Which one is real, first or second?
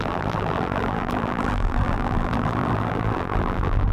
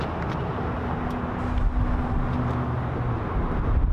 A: second